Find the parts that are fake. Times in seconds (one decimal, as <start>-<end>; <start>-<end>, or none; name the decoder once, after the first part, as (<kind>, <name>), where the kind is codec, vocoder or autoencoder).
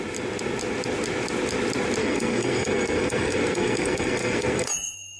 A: 2.0-5.2 (codec, SNAC)